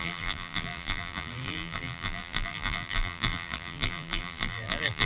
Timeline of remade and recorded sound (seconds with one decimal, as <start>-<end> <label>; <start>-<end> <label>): 0.0-5.0 remade